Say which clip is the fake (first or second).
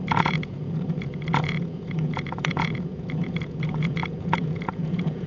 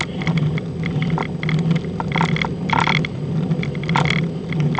first